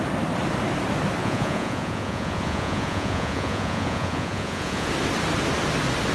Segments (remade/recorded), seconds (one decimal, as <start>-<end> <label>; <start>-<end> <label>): 0.0-1.2 recorded; 1.2-4.9 remade; 4.9-6.1 recorded